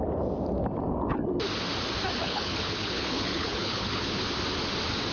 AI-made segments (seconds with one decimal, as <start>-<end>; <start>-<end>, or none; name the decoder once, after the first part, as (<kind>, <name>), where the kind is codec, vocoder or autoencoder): 2.2-4.2 (codec, HILCodec)

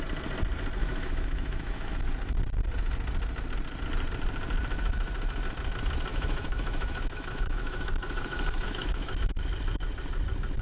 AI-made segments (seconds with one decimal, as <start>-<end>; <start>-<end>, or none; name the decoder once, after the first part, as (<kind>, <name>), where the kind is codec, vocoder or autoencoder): 0.8-2.0 (autoencoder, DAC-VAE); 6.1-9.2

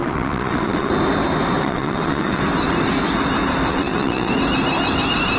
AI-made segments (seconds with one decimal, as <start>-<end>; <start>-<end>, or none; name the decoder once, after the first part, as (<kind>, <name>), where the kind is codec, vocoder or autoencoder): 0.0-0.9 (vocoder, WaveNeXt); 1.6-2.4; 3.7-4.3

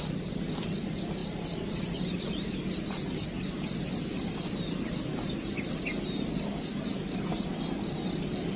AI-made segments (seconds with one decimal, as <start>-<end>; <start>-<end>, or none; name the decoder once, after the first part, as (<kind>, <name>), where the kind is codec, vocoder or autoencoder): none

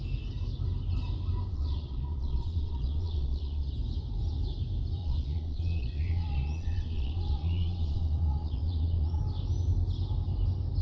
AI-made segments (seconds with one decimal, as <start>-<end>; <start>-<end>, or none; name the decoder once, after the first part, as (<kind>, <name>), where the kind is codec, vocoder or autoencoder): 1.5-3.7 (vocoder, Vocos); 5.0-9.2

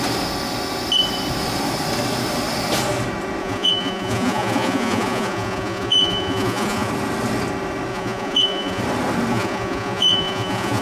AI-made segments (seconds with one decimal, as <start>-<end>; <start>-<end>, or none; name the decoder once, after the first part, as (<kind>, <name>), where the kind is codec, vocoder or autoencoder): 3.4-6.9 (vocoder, Vocos); 7.9-8.8; 9.3-10.8